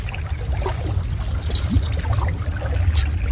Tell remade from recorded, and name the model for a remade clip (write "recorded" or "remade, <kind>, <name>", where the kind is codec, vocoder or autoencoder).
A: recorded